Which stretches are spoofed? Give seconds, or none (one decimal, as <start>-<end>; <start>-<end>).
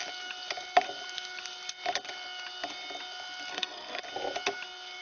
3.5-4.0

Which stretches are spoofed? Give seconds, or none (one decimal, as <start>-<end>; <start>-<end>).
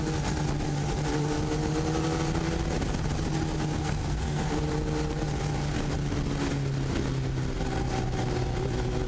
3.8-4.5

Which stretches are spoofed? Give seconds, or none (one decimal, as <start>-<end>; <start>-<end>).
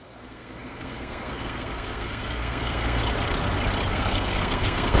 0.0-3.0; 3.9-5.0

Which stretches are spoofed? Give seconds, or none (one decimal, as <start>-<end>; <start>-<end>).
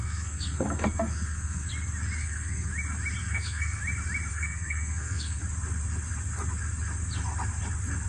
0.0-1.7; 2.2-2.7; 3.2-3.8; 4.3-5.4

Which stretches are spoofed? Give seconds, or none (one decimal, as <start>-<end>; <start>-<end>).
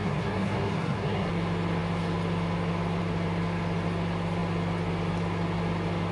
0.0-1.3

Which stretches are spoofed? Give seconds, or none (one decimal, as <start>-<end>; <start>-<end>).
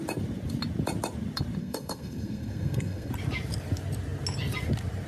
1.6-3.1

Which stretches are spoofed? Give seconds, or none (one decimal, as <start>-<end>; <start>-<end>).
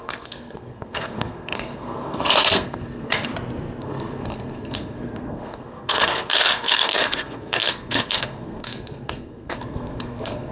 0.0-3.3; 3.8-10.5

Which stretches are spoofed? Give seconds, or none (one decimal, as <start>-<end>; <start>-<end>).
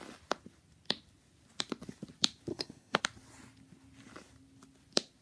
2.5-3.0